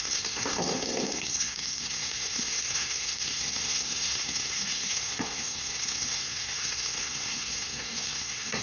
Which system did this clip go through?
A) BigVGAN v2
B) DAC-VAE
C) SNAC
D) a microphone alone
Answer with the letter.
C